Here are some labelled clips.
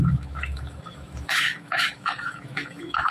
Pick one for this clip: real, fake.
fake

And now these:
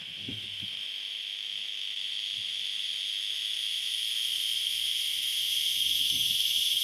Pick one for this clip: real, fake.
fake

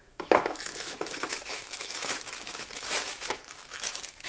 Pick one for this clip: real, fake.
fake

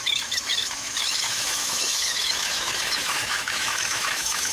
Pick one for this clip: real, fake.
fake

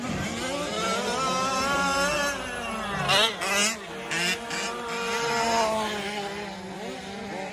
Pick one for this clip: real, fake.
real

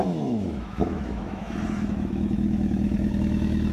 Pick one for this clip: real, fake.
fake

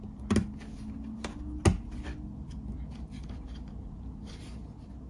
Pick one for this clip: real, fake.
real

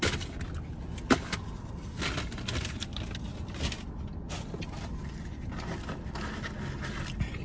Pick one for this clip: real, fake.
real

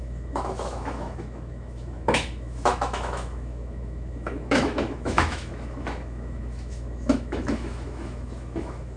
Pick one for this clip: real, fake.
fake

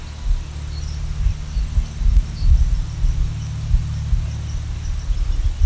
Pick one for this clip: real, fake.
real